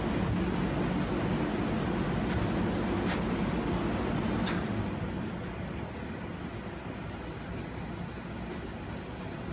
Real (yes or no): yes